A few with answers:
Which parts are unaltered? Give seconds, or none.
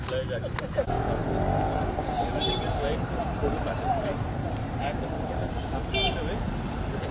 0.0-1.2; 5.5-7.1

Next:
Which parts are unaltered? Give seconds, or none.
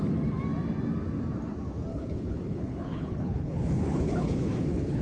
0.0-1.9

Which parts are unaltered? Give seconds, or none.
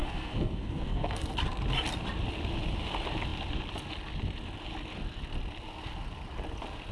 1.3-6.9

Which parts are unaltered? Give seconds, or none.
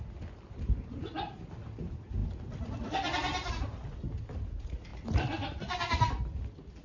0.0-6.8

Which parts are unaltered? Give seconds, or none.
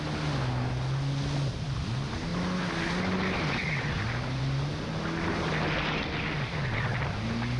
0.0-7.6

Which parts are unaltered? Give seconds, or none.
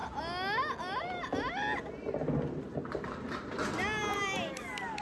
0.0-5.0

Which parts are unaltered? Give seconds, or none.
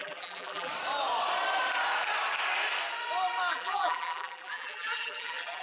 0.7-3.5